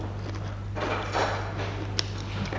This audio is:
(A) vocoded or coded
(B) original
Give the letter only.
B